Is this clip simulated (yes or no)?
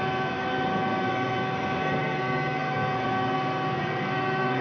yes